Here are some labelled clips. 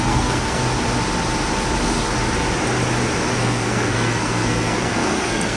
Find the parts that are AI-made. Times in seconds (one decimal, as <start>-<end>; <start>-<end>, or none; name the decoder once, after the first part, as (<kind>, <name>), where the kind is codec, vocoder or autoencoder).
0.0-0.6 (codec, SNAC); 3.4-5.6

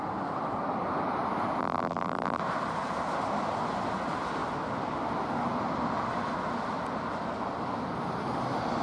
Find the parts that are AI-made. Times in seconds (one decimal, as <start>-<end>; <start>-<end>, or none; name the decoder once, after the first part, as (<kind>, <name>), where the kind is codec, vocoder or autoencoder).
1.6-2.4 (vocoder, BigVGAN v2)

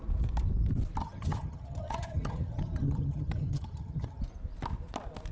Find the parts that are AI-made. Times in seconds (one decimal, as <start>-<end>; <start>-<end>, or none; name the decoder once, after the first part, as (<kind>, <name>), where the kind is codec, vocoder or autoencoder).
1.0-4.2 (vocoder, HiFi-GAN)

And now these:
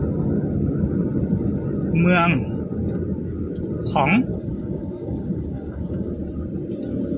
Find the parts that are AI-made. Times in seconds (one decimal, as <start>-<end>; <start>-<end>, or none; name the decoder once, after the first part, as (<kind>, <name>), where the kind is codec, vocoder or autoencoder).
4.3-6.1 (codec, DAC)

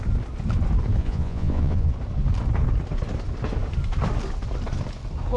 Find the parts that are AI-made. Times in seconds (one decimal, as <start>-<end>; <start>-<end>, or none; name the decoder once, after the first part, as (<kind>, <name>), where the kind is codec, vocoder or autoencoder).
1.0-1.9 (vocoder, Vocos)